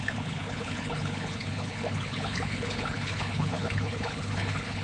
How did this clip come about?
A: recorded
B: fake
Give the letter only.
B